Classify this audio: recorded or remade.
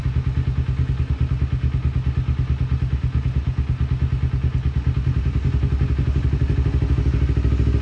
recorded